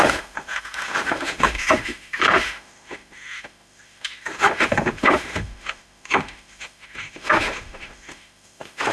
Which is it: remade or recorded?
remade